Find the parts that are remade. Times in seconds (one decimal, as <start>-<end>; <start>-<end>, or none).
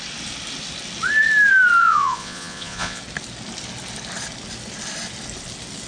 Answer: 1.8-3.0